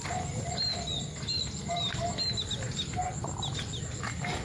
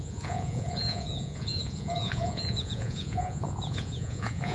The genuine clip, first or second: first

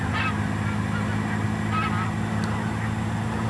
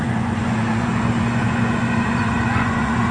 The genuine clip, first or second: first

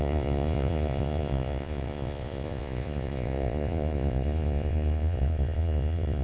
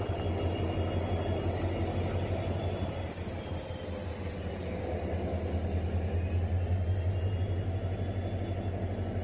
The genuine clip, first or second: second